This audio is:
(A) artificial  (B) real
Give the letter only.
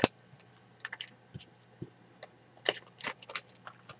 B